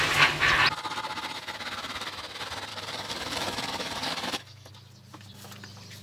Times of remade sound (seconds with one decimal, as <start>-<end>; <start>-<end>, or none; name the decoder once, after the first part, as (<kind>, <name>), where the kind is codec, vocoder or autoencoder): 2.7-4.7 (codec, DAC)